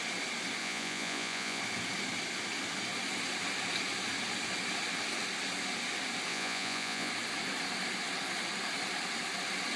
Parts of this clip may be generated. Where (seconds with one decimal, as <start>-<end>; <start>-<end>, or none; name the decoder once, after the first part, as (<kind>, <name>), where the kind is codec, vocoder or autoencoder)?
0.6-1.6 (vocoder, Vocos); 6.3-7.1